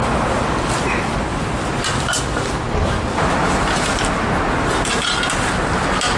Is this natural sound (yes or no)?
yes